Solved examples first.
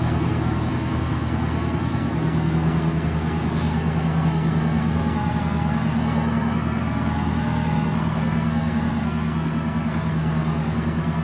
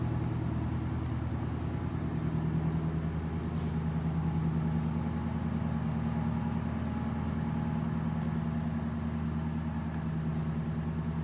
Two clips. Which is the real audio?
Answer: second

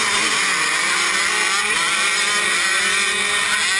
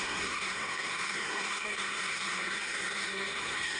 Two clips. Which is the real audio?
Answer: first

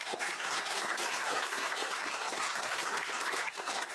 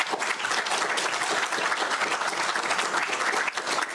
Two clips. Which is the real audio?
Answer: second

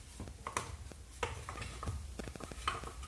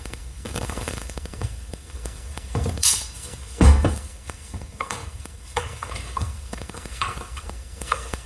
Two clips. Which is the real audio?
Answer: first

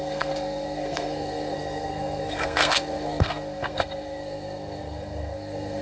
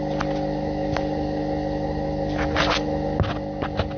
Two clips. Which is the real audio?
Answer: second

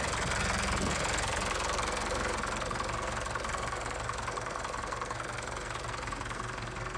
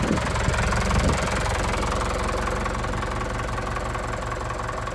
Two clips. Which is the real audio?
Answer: second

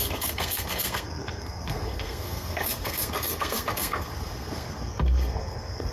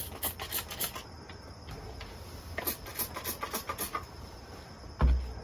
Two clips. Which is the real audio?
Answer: second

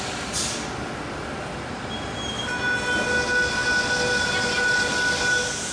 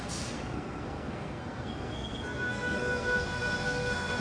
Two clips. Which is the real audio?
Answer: first